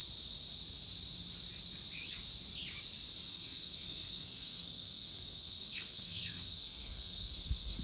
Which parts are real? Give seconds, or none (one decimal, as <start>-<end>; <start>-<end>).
0.0-3.3